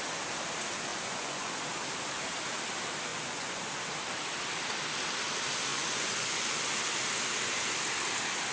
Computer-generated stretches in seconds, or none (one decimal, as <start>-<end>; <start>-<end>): 0.9-1.5; 3.1-3.6; 5.7-6.6